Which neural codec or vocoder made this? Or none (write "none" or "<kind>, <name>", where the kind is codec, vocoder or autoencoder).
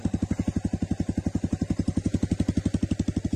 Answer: none